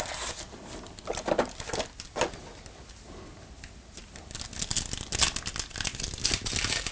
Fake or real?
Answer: real